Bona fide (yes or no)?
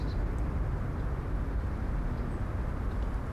yes